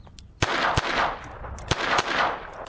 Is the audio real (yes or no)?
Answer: yes